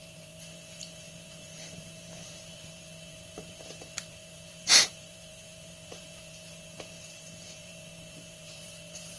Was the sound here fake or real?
fake